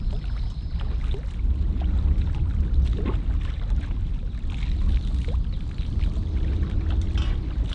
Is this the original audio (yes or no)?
yes